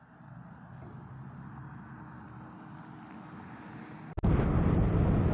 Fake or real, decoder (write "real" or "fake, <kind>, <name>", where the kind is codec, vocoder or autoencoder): real